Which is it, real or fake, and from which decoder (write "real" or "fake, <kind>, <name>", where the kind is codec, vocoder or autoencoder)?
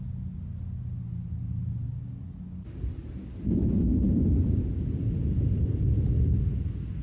real